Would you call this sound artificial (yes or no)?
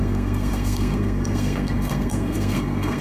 yes